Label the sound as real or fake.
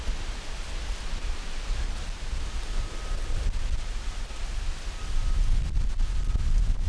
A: real